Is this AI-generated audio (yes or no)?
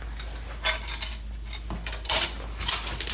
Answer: no